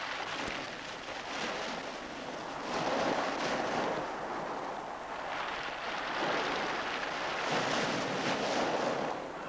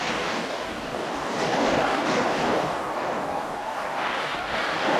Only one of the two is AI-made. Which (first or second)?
second